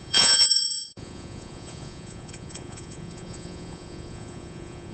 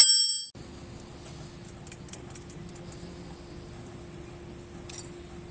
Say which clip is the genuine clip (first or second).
second